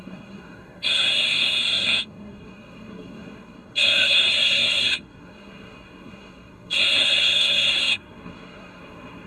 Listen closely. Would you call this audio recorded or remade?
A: remade